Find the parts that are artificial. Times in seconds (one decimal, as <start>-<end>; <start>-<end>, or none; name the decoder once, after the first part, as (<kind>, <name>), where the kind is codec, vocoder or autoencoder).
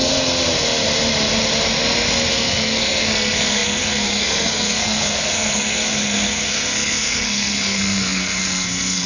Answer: 2.3-9.1 (codec, SNAC)